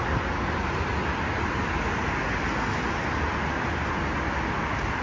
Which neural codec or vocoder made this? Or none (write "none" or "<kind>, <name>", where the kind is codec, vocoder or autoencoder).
none